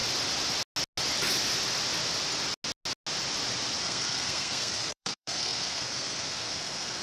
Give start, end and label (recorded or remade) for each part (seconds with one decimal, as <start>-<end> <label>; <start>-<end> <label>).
0.0-3.8 recorded; 3.8-7.0 remade